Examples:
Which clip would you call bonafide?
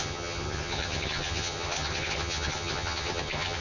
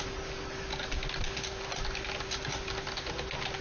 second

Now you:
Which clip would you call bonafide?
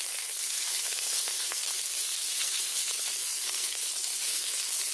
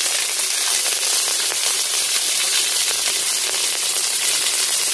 second